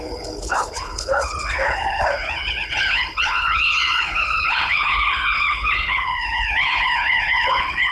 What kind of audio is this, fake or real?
fake